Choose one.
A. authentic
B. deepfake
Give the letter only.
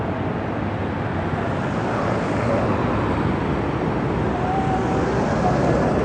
A